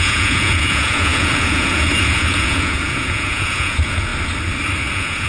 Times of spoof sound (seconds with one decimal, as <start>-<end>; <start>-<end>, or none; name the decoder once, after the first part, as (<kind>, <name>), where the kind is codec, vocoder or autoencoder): 0.0-4.1 (vocoder, Vocos); 4.8-5.3